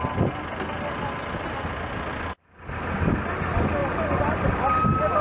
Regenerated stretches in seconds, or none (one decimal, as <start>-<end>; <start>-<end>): none